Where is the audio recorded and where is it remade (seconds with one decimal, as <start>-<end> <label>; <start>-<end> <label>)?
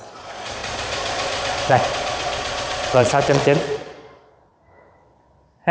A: 0.0-4.5 remade; 4.5-5.7 recorded